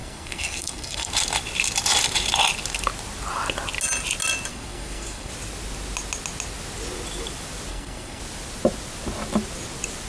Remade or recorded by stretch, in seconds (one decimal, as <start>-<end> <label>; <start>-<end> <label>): 0.0-1.1 remade; 1.1-4.5 recorded; 4.5-5.3 remade; 5.3-7.7 recorded; 7.7-8.2 remade; 8.2-10.1 recorded